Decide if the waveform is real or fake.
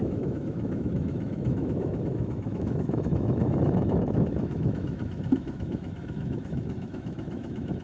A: fake